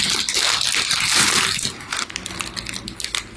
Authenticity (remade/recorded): recorded